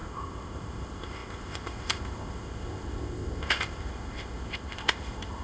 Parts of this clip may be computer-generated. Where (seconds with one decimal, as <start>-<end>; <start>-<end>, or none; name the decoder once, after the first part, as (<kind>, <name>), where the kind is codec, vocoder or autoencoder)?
0.0-5.4 (codec, ZipCodec)